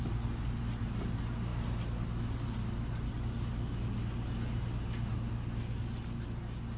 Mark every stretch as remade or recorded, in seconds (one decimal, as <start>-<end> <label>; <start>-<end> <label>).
0.0-6.8 recorded